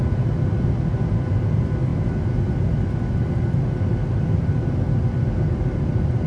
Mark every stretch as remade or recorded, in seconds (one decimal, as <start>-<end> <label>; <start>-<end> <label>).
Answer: 0.0-6.3 recorded